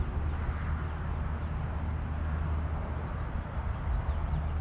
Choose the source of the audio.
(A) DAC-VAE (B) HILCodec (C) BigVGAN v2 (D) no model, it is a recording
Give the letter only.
D